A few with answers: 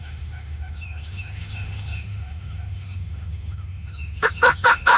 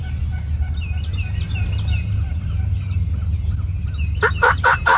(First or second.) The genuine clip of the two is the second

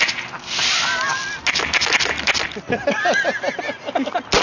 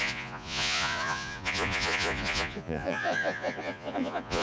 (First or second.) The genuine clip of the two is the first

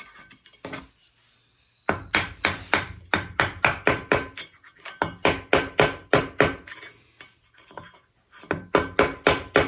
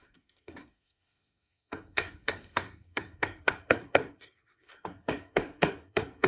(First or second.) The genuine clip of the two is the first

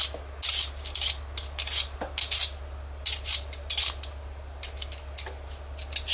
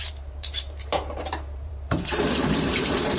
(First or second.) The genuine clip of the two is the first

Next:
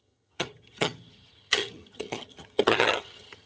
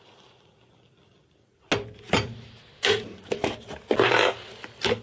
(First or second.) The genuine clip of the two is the second